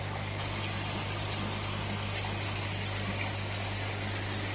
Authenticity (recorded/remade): recorded